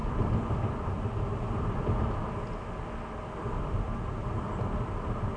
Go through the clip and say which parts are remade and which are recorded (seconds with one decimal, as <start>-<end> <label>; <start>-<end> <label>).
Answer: 0.0-2.2 remade; 2.2-3.4 recorded; 3.4-5.4 remade